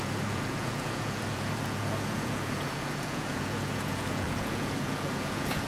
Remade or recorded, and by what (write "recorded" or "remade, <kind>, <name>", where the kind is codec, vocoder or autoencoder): remade, vocoder, Vocos